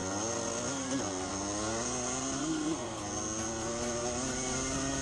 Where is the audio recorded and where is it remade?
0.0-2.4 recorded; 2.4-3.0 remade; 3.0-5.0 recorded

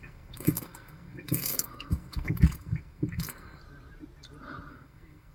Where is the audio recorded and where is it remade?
0.0-3.6 remade; 3.6-4.7 recorded; 4.7-5.3 remade

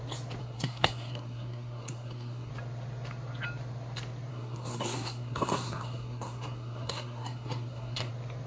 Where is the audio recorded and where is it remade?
0.0-0.4 recorded; 0.4-2.5 remade; 2.5-4.3 recorded; 4.3-8.1 remade; 8.1-8.5 recorded

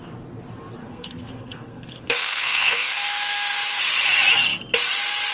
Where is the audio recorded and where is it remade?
0.0-0.8 recorded; 0.8-3.6 remade; 3.6-5.3 recorded

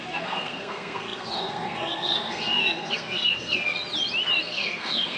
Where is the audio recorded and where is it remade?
0.0-3.8 remade; 3.8-4.4 recorded; 4.4-5.2 remade